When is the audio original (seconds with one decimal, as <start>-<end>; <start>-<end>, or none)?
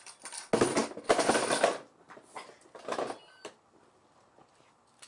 0.0-0.8; 3.8-5.1